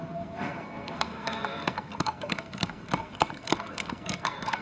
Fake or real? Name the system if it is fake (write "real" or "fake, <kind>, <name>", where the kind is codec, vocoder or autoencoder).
fake, codec, SNAC